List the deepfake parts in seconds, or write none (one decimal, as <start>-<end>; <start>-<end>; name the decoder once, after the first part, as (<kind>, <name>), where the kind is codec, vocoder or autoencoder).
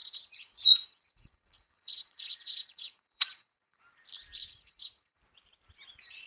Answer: 0.0-3.8 (vocoder, Vocos); 4.4-5.2